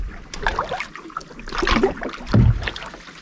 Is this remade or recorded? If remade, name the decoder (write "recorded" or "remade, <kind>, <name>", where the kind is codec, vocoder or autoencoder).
recorded